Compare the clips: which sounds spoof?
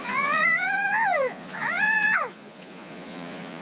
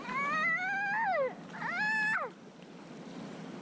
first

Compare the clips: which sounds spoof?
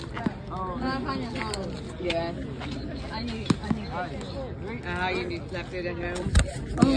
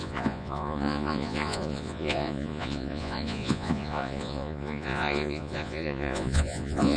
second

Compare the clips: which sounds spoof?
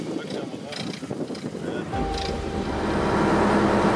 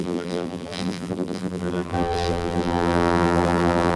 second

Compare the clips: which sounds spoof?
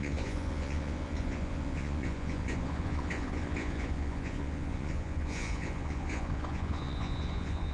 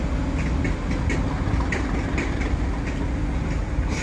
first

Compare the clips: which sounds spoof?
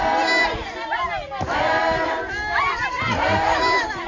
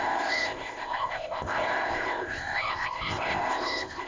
second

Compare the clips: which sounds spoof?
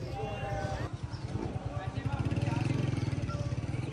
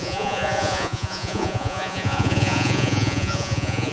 second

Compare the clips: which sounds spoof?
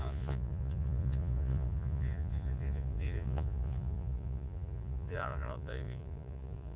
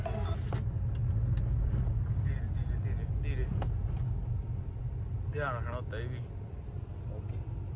first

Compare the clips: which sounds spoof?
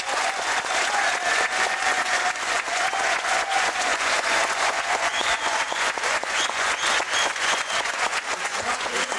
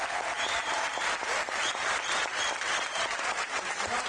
first